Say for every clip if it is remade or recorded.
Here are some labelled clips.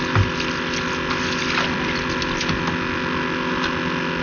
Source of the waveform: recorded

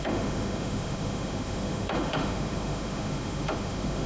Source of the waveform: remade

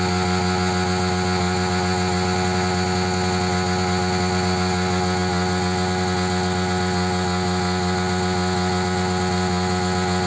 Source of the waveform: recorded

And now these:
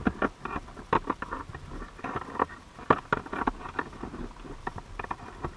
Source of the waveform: recorded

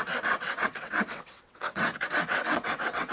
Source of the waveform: remade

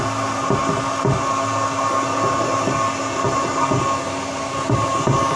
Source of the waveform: recorded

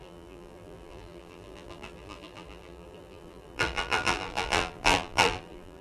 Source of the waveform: remade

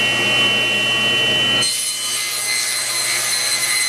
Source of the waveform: recorded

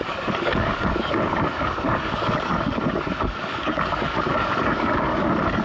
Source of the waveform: remade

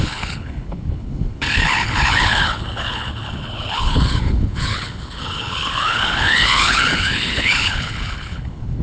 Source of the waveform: remade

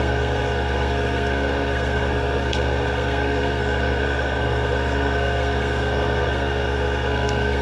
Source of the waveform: remade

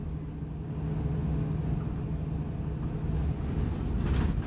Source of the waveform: recorded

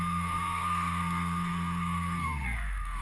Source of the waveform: remade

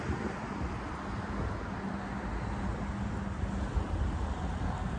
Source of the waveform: recorded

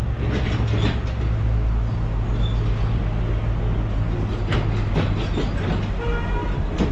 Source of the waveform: recorded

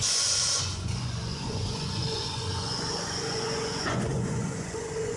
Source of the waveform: remade